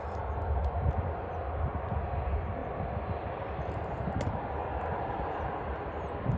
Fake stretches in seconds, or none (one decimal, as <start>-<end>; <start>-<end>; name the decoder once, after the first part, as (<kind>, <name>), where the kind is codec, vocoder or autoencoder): none